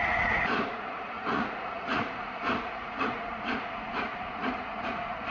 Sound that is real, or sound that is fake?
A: fake